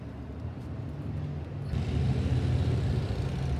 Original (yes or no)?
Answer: yes